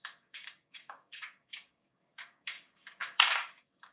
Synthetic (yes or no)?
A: yes